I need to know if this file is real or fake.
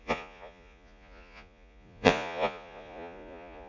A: fake